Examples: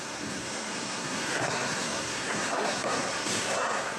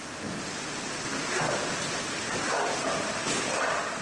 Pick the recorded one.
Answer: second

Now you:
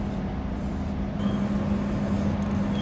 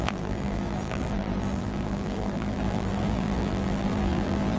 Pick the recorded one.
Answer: first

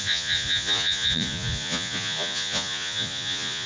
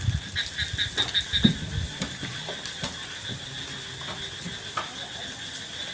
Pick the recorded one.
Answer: second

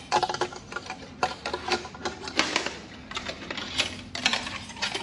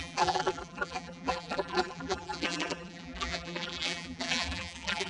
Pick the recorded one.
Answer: first